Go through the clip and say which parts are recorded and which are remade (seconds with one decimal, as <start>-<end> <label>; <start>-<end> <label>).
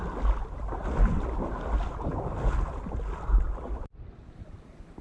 0.0-5.0 recorded